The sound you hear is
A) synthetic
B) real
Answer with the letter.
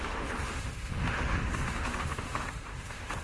A